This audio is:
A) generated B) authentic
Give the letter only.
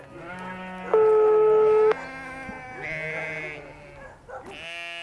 B